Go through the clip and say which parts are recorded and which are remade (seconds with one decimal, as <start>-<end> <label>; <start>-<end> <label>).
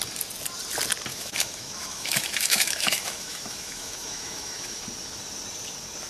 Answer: 0.0-1.1 recorded; 1.1-4.8 remade; 4.8-6.1 recorded